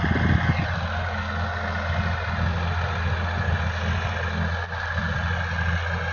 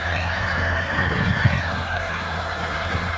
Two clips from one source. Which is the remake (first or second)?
second